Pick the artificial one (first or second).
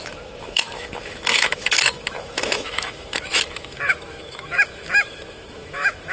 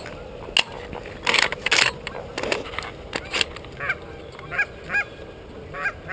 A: first